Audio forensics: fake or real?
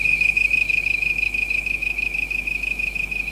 fake